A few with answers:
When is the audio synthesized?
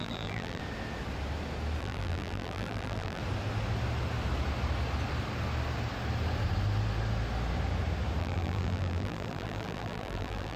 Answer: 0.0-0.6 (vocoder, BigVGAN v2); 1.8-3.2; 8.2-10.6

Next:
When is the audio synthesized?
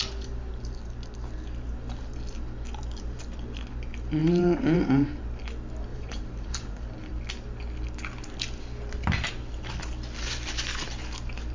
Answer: 4.2-5.2 (vocoder, BigVGAN v2); 5.9-7.1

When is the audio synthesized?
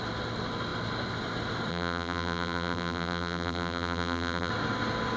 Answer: 1.7-4.5 (vocoder, BigVGAN v2)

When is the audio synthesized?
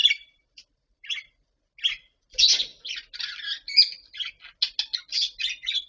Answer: 0.0-1.3 (vocoder, BigVGAN v2)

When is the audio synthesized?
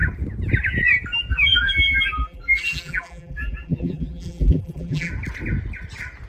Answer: 1.3-5.1 (vocoder, BigVGAN v2)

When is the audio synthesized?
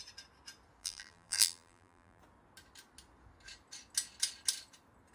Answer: 0.8-2.2 (vocoder, BigVGAN v2)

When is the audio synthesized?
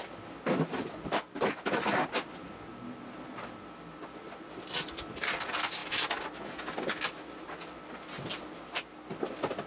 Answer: none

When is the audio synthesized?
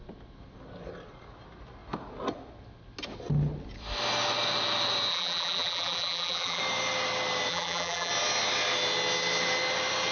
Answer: 5.1-6.6 (vocoder, BigVGAN v2); 7.5-8.1